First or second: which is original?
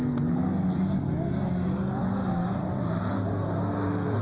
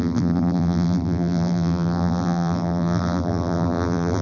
first